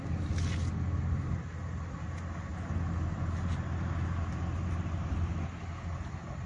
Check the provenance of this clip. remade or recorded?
recorded